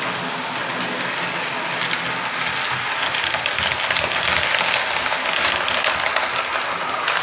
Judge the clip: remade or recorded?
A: recorded